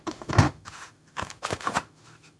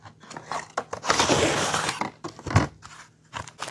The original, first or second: second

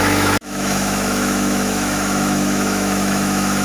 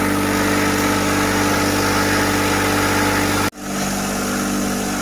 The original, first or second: second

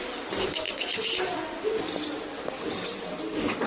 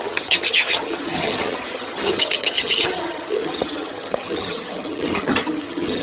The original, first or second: first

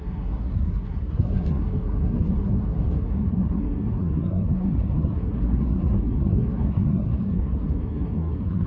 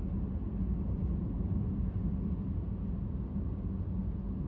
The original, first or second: second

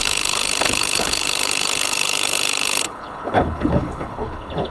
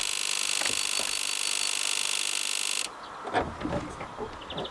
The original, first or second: second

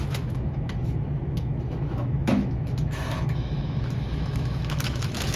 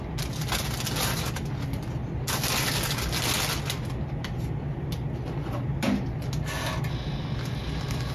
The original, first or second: second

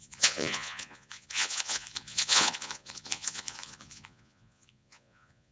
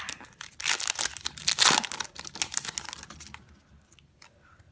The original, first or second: second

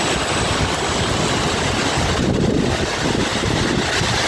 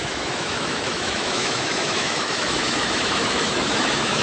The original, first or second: first